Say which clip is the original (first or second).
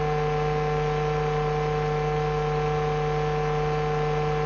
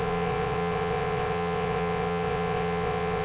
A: first